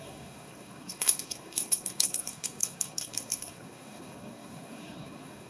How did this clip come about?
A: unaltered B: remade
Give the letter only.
B